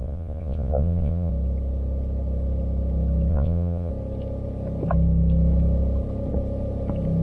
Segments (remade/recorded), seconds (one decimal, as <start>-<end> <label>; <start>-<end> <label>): 0.0-1.3 remade; 1.3-3.3 recorded; 3.3-3.9 remade; 3.9-7.2 recorded

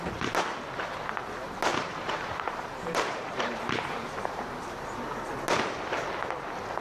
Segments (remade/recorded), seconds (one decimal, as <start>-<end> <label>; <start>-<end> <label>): 0.0-1.7 recorded; 1.7-4.5 remade; 4.5-6.8 recorded

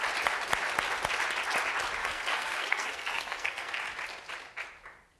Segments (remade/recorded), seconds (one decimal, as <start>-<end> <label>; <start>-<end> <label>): 0.0-2.0 recorded; 2.0-3.8 remade; 3.8-5.2 recorded

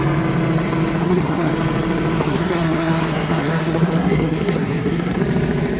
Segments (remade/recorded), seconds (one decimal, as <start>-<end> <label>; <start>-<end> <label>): 0.0-1.0 recorded; 1.0-1.5 remade; 1.5-2.2 recorded; 2.2-5.2 remade; 5.2-5.8 recorded

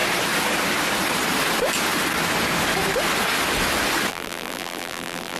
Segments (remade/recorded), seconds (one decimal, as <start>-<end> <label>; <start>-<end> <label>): 0.0-4.1 recorded; 4.1-5.4 remade